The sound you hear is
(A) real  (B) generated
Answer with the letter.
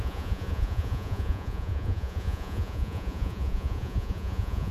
B